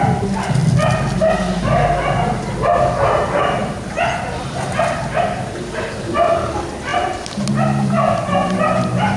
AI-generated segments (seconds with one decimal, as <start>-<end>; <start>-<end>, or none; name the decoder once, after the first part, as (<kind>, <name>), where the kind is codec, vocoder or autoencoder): none